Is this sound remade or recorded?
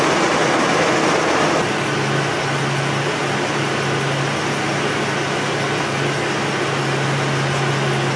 recorded